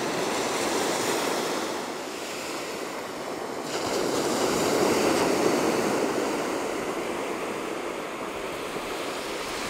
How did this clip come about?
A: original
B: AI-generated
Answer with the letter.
A